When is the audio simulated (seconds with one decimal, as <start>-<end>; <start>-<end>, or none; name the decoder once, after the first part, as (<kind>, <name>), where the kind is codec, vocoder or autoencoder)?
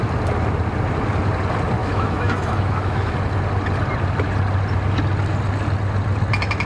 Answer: 1.8-3.1 (autoencoder, DAC-VAE)